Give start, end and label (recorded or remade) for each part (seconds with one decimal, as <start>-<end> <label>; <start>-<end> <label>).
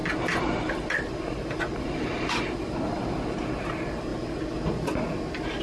0.0-3.2 remade; 3.2-4.1 recorded; 4.1-5.6 remade